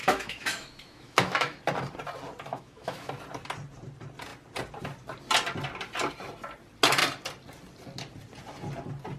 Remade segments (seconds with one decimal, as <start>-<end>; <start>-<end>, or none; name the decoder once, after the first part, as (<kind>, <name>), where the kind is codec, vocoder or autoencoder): 0.0-1.6 (autoencoder, DAC-VAE); 2.5-3.1

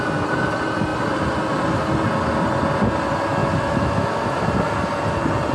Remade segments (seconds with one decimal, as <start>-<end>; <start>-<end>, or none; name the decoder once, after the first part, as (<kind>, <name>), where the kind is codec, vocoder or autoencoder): 3.4-4.4 (autoencoder, DAC-VAE)

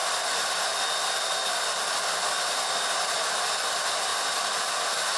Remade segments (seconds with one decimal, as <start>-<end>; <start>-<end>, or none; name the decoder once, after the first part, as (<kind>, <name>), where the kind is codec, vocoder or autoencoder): none

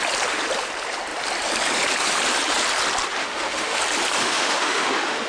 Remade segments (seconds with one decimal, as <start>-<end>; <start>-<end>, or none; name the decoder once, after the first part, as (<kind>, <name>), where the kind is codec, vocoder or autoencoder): 3.2-3.8 (autoencoder, DAC-VAE); 4.2-5.3

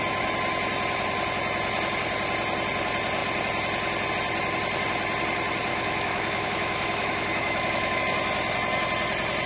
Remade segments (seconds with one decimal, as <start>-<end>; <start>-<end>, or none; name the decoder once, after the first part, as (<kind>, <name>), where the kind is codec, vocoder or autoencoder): 5.7-8.0 (autoencoder, DAC-VAE)

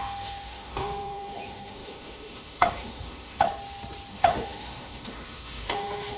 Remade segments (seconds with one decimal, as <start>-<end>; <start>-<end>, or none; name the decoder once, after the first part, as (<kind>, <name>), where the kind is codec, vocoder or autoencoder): 0.0-3.5 (autoencoder, DAC-VAE); 4.1-6.2

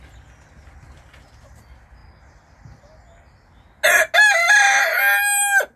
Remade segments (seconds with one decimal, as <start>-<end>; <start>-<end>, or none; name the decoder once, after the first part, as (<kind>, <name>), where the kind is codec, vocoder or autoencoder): none

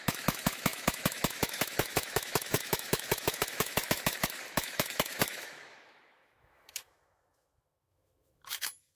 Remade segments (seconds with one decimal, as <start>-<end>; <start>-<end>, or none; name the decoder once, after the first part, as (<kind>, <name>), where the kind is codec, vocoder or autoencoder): 0.0-9.0 (autoencoder, DAC-VAE)